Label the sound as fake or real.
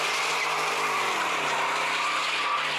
real